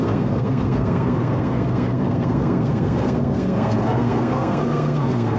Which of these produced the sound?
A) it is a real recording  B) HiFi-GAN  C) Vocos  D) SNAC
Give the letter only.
D